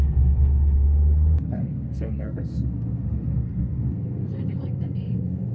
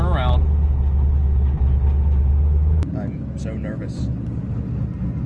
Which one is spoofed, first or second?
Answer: first